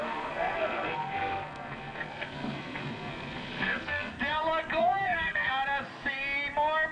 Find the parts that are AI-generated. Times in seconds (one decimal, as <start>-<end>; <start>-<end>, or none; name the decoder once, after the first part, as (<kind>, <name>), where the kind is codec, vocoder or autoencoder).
0.0-4.1 (codec, SNAC); 4.8-5.5